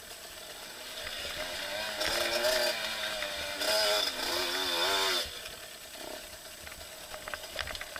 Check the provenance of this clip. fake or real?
real